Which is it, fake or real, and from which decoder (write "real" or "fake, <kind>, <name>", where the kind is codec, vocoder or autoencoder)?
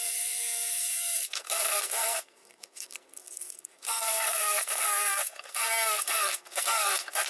fake, codec, SNAC